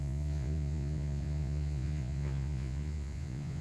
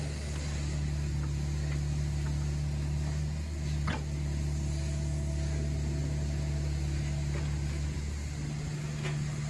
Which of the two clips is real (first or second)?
second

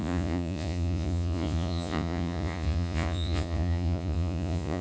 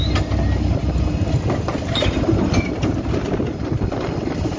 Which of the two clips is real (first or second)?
second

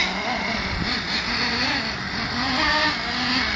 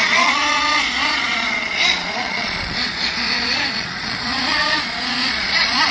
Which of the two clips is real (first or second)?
first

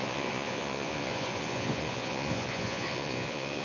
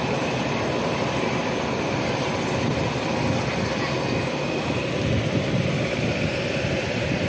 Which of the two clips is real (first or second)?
second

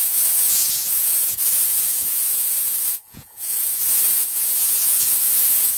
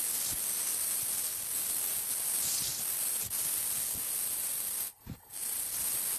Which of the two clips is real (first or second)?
second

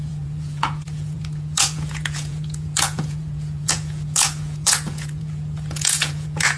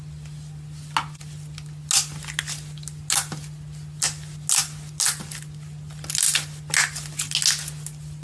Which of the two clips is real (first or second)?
second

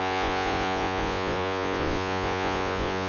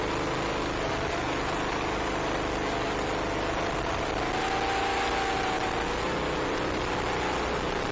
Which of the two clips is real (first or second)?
second